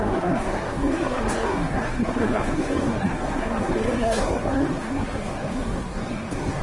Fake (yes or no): yes